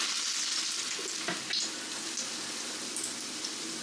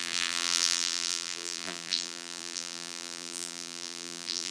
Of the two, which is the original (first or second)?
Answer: first